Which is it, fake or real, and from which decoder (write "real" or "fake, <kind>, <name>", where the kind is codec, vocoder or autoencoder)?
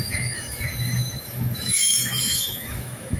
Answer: fake, autoencoder, DAC-VAE